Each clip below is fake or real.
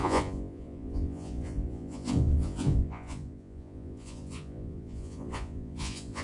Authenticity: fake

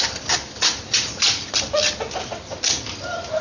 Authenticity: real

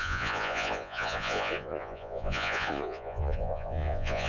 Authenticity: fake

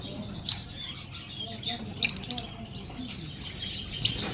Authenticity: real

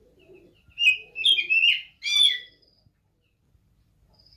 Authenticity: real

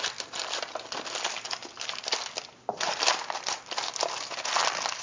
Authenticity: real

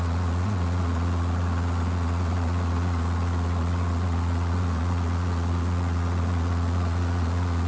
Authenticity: fake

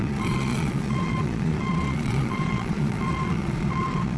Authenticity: fake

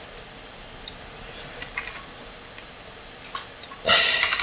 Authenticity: real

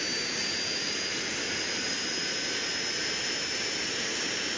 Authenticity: real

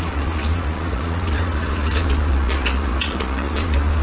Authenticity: fake